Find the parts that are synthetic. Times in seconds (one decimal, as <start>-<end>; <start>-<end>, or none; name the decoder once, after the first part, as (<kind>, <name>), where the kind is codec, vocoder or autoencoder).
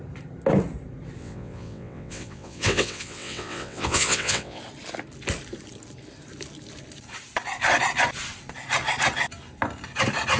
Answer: 1.2-4.6 (vocoder, WaveNeXt)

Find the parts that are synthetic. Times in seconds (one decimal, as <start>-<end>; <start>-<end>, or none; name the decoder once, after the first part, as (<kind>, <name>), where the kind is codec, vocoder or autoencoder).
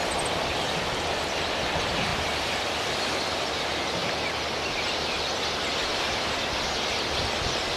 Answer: 0.0-4.0 (vocoder, BigVGAN v2); 7.1-7.8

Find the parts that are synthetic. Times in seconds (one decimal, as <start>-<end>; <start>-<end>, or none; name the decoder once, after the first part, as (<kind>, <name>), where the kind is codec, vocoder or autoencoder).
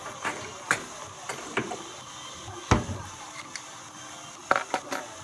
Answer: none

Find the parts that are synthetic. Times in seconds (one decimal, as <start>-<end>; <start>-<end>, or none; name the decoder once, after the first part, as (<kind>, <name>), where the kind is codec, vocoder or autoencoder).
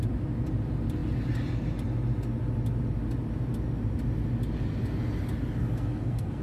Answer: 5.6-6.4 (codec, SNAC)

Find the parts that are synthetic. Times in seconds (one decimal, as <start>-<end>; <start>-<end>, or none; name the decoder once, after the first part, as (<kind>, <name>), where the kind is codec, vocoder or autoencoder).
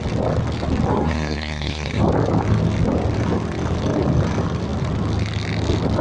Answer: 0.9-2.0 (codec, SNAC)